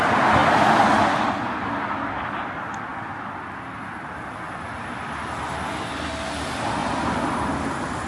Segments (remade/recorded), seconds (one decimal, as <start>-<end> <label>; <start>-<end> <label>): 0.0-8.1 recorded